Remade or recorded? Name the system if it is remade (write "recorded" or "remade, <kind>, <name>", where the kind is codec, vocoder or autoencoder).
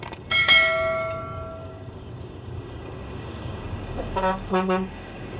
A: remade, codec, DAC